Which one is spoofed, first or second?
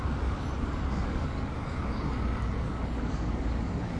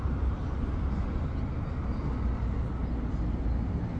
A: first